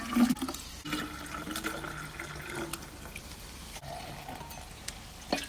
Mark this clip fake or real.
real